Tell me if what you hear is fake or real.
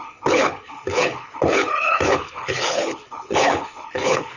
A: fake